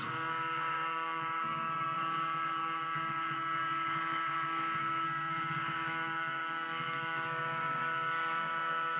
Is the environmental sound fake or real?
fake